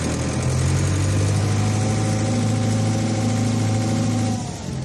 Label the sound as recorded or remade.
recorded